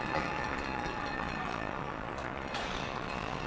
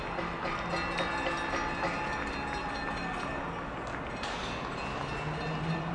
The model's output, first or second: first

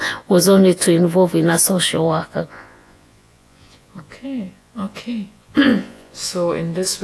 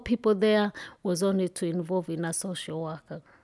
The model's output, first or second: first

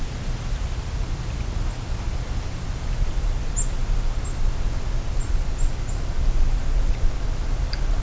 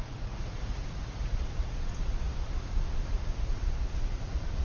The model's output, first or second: second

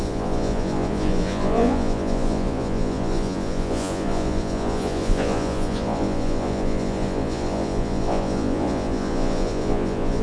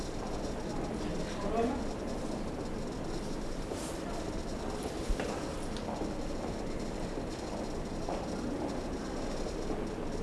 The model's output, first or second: first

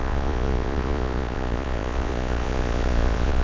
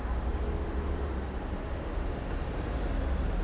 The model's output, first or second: first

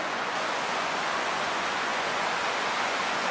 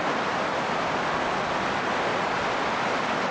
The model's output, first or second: first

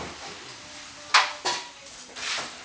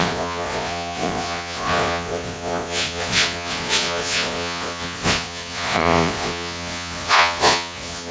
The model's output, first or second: second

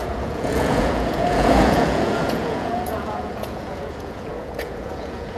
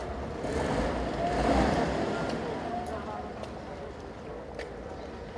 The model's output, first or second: first